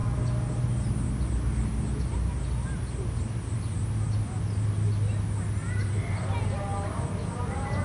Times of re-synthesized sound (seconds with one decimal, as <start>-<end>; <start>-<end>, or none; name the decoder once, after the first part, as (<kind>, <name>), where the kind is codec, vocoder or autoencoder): none